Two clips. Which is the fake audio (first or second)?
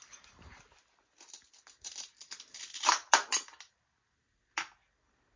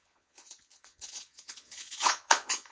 second